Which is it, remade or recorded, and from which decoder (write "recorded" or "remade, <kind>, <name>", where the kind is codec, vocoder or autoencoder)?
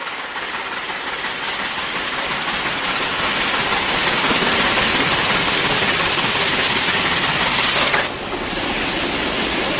recorded